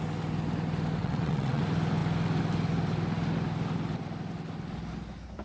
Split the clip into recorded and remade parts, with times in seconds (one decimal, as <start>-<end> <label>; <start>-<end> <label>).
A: 0.0-1.0 recorded; 1.0-1.6 remade; 1.6-5.4 recorded